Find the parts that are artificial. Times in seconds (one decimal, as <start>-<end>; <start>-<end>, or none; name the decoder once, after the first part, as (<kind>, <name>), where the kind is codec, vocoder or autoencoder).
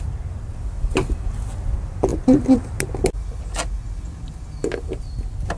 none